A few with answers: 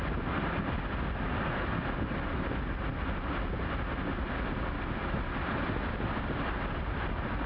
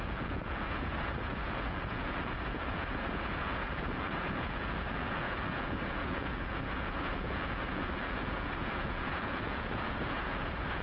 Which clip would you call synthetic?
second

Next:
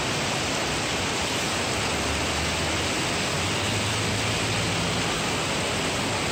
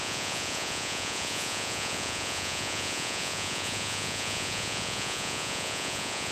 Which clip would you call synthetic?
second